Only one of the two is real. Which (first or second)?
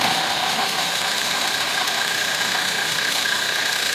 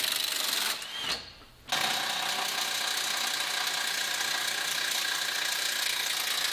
second